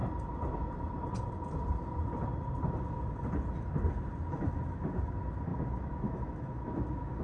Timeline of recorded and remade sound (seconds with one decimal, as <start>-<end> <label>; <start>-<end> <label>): 0.0-4.3 recorded; 4.3-7.2 remade